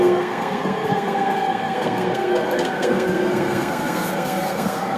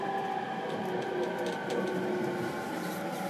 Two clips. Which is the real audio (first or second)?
second